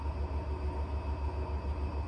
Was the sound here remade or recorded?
recorded